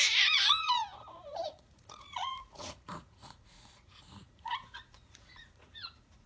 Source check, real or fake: fake